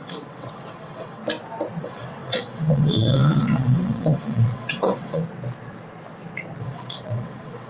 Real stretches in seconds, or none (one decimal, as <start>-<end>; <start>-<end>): 1.2-1.8; 5.2-6.6